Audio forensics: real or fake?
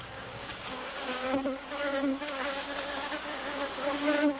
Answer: fake